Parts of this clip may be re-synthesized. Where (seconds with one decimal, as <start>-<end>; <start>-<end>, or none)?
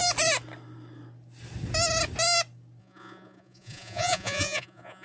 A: 2.8-5.0